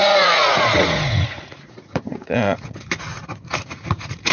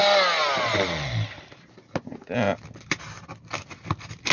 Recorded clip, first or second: second